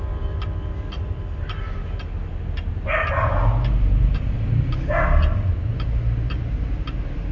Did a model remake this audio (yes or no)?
no